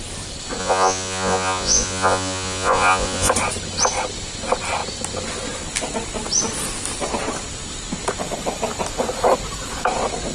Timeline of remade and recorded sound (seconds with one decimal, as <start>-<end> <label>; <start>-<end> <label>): 0.0-0.6 recorded; 0.6-3.3 remade; 3.3-10.3 recorded